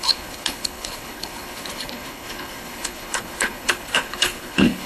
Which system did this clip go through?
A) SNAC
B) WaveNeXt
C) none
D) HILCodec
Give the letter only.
D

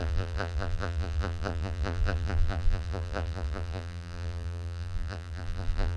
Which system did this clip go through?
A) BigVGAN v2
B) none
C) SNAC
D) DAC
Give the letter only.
A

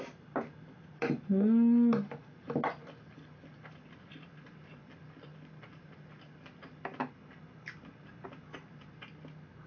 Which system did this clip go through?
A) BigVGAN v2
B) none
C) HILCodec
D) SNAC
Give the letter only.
B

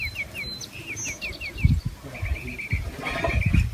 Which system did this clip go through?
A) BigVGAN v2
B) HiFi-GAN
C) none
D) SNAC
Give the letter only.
C